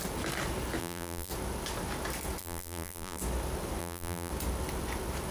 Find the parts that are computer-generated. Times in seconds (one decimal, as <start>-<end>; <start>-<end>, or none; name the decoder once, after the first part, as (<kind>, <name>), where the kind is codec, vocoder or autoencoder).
0.8-1.3 (vocoder, BigVGAN v2); 2.4-3.2; 3.8-4.3